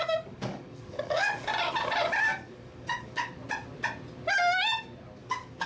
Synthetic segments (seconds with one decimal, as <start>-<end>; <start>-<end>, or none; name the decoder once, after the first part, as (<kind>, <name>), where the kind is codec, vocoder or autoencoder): 0.0-1.5 (codec, DAC); 2.2-3.3; 5.2-5.7